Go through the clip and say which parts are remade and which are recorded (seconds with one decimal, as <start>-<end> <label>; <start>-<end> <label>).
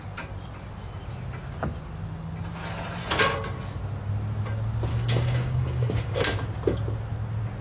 0.0-4.9 recorded; 4.9-6.1 remade; 6.1-7.6 recorded